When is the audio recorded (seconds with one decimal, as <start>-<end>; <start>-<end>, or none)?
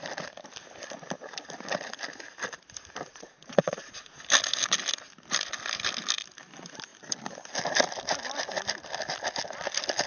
0.0-3.1; 4.2-10.1